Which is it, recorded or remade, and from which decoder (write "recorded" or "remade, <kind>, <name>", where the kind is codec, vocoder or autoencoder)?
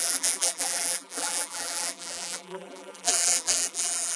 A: remade, vocoder, BigVGAN v2